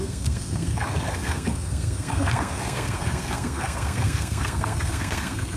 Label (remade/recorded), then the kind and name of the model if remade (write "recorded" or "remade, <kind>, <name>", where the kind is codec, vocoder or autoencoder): remade, codec, SNAC